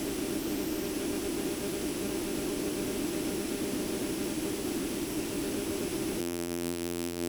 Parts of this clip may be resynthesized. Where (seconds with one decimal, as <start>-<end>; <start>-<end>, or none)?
6.2-7.3